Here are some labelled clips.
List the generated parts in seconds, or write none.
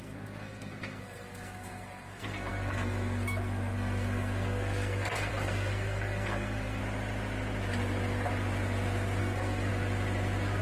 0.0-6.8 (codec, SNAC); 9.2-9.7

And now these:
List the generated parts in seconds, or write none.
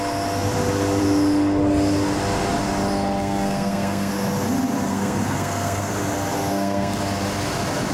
3.2-4.1 (codec, SNAC); 4.9-5.9; 6.5-7.0